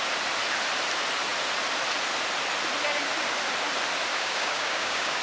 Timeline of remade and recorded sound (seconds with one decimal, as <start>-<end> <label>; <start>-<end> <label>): 0.0-4.1 recorded; 4.1-5.2 remade